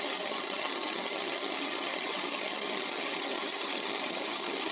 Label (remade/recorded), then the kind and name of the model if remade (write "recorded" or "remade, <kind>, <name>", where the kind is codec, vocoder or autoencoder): remade, vocoder, HiFi-GAN